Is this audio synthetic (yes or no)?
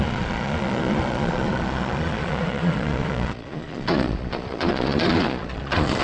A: yes